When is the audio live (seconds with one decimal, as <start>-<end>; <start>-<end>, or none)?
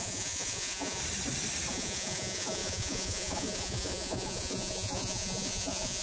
1.0-1.7